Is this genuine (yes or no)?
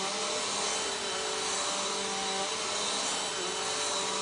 yes